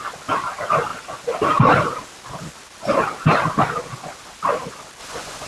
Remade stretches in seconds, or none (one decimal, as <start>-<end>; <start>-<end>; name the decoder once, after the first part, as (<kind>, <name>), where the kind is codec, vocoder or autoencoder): 5.0-5.5 (vocoder, Vocos)